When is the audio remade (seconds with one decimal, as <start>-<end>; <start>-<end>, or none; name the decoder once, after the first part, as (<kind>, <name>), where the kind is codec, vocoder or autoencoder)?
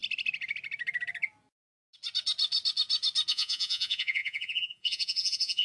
3.3-5.6 (vocoder, Vocos)